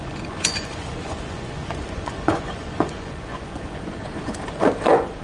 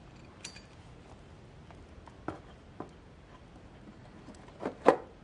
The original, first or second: second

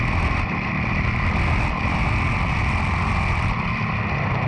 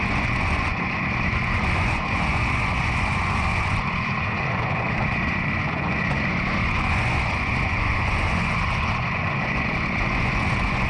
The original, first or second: first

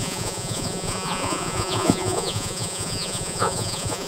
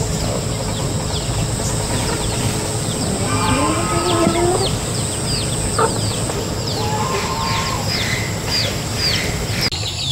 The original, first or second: second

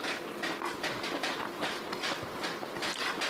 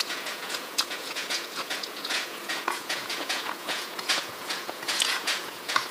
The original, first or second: first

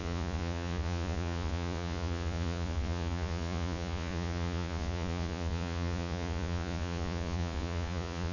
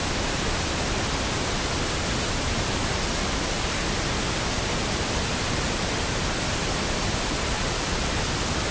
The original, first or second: second